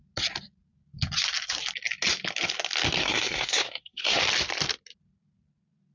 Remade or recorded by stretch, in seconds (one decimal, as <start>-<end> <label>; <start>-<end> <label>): 0.0-3.0 recorded; 3.0-4.2 remade; 4.2-5.9 recorded